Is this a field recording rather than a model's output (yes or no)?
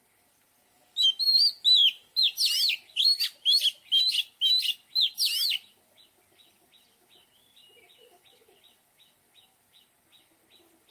yes